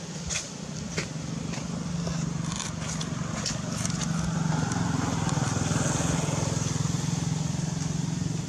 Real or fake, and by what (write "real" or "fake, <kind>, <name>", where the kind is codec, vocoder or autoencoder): real